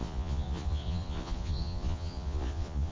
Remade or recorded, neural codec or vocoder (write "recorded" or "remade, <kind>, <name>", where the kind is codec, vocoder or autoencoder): remade, vocoder, Vocos